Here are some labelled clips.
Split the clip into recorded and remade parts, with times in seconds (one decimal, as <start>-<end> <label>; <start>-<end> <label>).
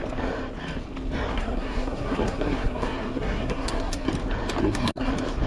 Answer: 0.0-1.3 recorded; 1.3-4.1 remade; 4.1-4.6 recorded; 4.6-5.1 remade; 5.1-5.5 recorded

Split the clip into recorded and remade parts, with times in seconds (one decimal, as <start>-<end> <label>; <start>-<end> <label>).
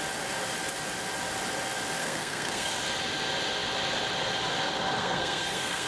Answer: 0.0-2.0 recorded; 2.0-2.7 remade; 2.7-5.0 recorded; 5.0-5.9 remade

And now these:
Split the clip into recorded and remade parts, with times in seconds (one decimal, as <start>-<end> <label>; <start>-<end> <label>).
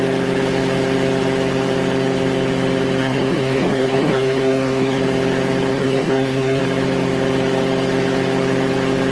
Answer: 0.0-3.0 recorded; 3.0-5.0 remade; 5.0-5.7 recorded; 5.7-6.6 remade; 6.6-9.1 recorded